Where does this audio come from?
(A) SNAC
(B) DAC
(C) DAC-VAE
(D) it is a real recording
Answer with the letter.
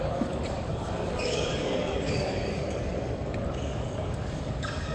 B